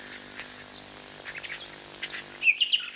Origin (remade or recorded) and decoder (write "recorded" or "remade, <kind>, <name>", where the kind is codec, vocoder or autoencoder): recorded